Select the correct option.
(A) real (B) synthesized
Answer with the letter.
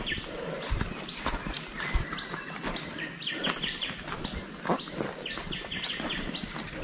A